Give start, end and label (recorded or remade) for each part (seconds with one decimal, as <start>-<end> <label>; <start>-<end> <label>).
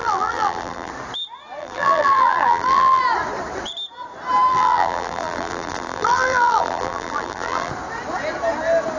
0.0-0.9 remade; 0.9-1.6 recorded; 1.6-3.0 remade; 3.0-4.5 recorded; 4.5-7.7 remade; 7.7-9.0 recorded